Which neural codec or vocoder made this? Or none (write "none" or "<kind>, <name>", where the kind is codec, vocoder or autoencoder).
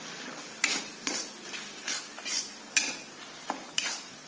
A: none